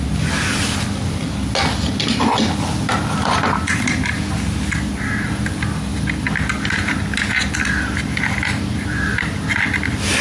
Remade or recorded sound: recorded